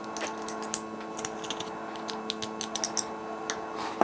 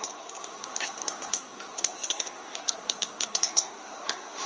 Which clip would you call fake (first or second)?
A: second